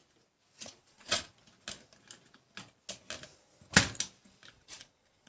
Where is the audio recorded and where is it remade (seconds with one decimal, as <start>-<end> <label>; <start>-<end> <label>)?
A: 0.0-0.8 recorded; 0.8-1.3 remade; 1.3-4.5 recorded; 4.5-5.3 remade